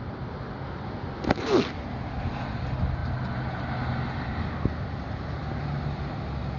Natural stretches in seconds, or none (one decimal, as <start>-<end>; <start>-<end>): 0.0-6.6